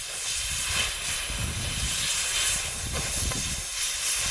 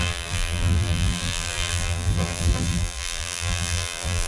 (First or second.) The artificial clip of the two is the second